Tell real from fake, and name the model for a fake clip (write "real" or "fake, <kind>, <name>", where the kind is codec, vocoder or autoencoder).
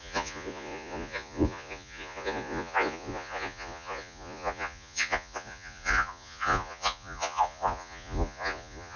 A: fake, vocoder, Vocos